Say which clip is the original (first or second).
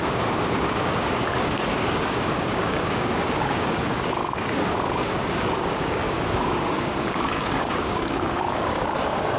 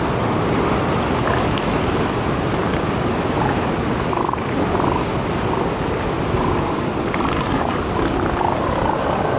second